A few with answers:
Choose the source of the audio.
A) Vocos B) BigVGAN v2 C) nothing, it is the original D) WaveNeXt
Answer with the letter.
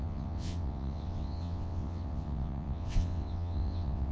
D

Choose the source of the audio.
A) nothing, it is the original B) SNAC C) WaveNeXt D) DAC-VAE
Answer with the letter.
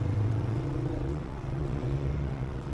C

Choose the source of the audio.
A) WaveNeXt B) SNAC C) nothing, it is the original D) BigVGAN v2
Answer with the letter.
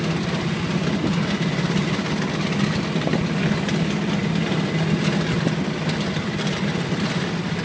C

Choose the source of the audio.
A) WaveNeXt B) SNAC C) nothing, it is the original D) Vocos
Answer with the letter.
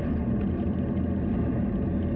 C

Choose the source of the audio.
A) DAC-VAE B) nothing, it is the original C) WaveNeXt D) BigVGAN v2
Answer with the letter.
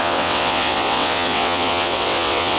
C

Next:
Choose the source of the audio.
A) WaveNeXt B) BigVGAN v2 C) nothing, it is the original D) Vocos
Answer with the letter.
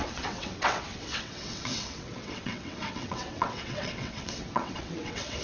A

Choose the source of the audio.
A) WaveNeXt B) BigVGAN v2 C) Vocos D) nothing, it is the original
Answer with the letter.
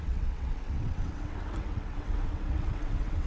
A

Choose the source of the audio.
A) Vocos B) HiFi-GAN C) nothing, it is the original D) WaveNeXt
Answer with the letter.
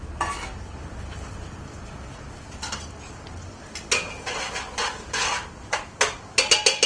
C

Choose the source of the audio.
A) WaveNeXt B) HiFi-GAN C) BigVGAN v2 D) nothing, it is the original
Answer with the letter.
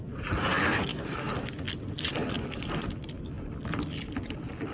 D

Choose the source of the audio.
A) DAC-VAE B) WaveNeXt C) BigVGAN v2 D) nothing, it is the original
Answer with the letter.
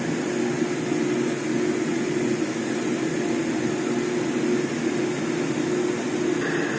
D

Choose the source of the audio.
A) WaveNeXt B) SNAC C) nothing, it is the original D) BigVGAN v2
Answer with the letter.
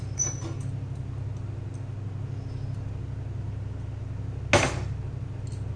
C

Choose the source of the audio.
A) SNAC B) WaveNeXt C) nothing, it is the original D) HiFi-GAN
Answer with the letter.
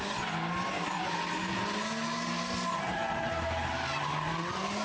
C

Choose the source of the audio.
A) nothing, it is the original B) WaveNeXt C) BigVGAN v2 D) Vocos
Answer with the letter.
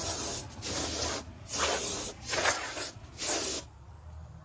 A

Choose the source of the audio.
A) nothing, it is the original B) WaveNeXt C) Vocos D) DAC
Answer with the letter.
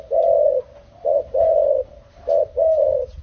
A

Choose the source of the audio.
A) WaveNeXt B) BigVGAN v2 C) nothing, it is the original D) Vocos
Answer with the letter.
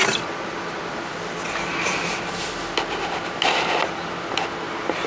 C